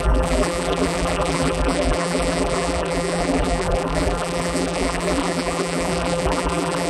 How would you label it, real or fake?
fake